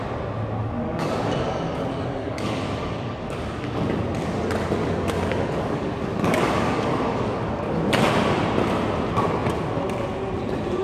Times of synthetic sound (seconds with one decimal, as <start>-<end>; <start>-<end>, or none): 0.6-4.0; 4.8-7.8